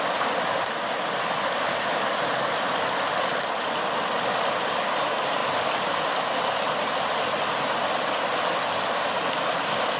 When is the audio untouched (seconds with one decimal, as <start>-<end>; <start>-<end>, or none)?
0.0-10.0